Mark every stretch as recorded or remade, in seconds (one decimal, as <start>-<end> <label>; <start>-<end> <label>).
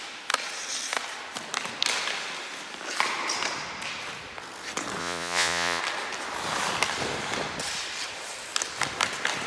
0.0-5.0 recorded; 5.0-5.8 remade; 5.8-9.5 recorded